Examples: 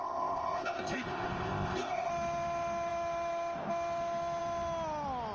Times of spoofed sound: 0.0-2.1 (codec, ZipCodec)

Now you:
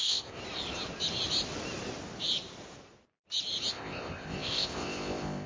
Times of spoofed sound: 0.0-0.4 (codec, ZipCodec); 3.7-5.5

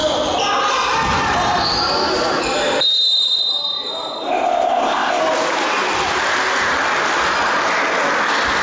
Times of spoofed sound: 4.3-5.2 (codec, ZipCodec)